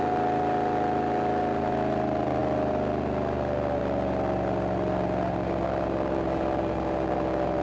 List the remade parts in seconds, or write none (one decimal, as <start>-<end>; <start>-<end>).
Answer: none